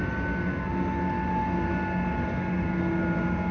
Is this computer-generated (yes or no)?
no